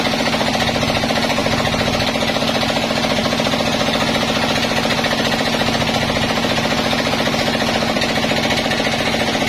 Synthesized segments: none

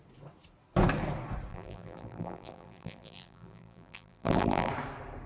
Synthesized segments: 1.5-4.7 (vocoder, BigVGAN v2)

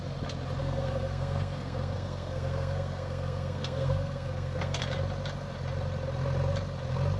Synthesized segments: 0.6-4.8 (codec, SNAC)

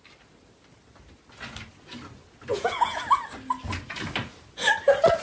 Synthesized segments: 2.5-3.0 (vocoder, Vocos)

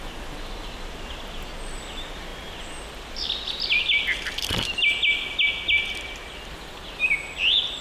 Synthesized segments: none

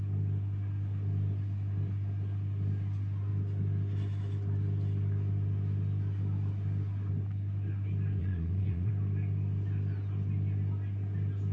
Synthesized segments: 8.2-8.9 (vocoder, Vocos)